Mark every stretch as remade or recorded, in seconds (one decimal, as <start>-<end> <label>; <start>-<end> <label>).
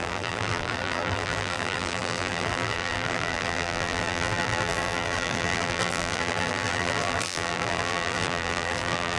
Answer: 0.0-9.2 remade